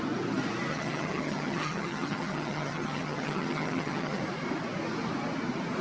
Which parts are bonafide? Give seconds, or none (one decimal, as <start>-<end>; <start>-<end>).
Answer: 0.0-0.7; 4.2-5.8